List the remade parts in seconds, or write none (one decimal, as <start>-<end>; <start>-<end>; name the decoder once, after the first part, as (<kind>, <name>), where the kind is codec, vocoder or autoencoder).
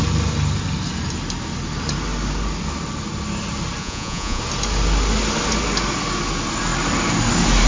3.8-4.4 (vocoder, Vocos)